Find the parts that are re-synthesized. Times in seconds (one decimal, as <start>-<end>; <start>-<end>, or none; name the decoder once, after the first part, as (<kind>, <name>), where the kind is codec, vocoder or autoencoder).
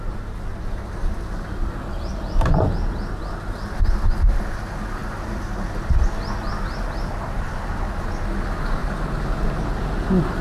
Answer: none